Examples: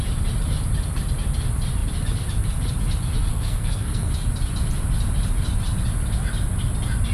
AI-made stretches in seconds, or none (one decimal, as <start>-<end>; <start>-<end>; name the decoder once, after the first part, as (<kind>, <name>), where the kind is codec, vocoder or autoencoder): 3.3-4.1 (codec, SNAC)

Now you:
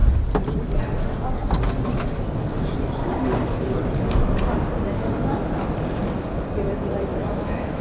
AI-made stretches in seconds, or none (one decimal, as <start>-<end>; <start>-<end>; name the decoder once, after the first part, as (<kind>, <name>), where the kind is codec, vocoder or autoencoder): 7.1-7.8 (autoencoder, DAC-VAE)

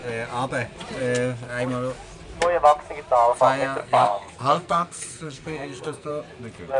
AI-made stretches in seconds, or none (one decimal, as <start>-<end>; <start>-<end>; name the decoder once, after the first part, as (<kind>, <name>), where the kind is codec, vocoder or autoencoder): 3.8-6.1 (codec, SNAC)